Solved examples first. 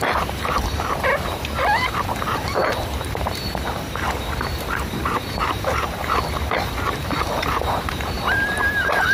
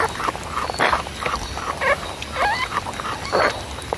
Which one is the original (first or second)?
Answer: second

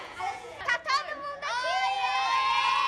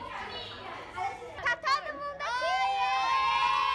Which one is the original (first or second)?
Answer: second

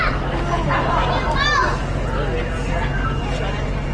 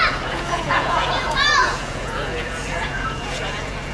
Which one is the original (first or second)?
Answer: first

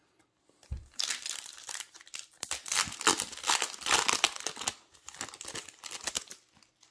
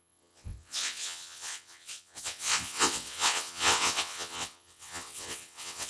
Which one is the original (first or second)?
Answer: first